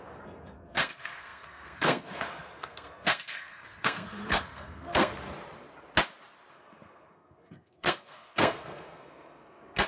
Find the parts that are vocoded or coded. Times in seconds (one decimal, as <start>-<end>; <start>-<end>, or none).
0.0-5.1; 6.5-9.9

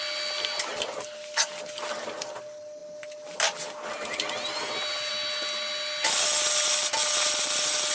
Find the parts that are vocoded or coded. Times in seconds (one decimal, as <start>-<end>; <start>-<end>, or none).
none

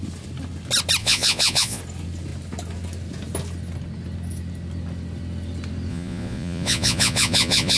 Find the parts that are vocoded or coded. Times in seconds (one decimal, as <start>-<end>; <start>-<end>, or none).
1.0-1.8; 5.9-7.8

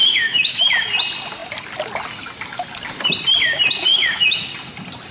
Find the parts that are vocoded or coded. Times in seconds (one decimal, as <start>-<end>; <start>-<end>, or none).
0.0-0.7; 3.9-4.5